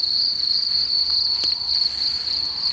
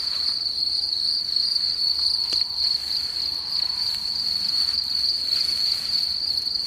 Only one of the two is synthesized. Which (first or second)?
second